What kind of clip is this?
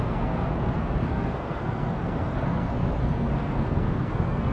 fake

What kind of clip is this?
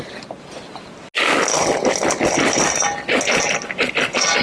real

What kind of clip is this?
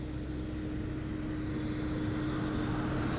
real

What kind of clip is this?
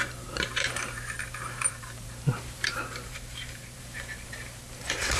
fake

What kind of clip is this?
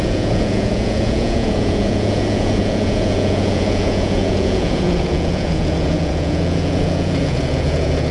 fake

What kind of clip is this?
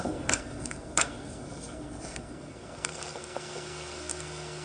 fake